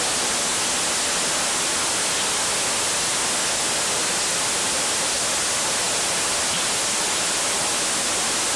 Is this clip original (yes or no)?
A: yes